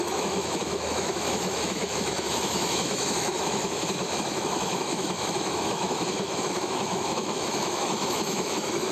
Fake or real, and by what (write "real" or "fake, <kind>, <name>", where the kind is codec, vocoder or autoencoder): fake, autoencoder, DAC-VAE